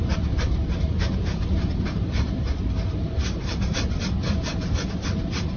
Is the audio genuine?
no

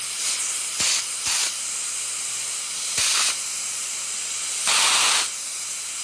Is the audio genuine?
yes